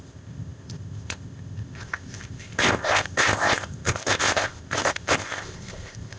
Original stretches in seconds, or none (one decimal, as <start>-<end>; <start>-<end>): none